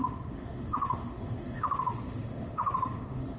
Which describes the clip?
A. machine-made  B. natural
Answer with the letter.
A